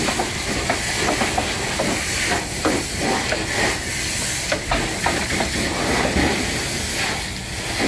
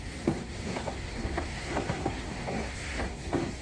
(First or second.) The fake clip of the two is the second